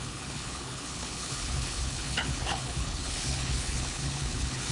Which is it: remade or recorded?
remade